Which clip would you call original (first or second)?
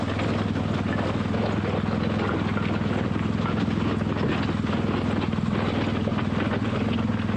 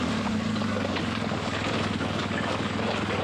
first